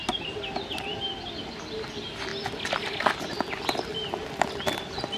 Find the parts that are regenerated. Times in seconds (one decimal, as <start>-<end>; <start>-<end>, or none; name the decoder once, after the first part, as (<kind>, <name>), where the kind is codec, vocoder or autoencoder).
none